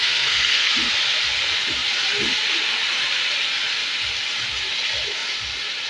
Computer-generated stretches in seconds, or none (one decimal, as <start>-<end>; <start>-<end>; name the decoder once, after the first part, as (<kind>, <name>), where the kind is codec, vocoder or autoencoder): 0.0-0.7 (codec, SNAC)